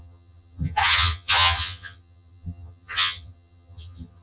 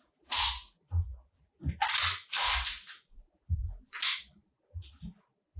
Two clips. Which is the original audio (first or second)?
second